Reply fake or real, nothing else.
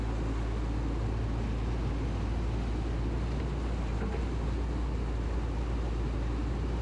real